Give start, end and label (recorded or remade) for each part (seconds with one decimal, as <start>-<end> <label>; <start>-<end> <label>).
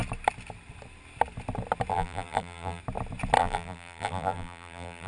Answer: 0.0-1.9 recorded; 1.9-2.8 remade; 2.8-3.4 recorded; 3.4-5.1 remade